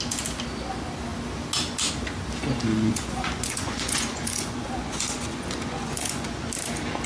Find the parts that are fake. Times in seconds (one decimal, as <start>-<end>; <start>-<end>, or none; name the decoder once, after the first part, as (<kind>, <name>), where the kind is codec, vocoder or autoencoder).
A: 2.7-6.5 (vocoder, Vocos)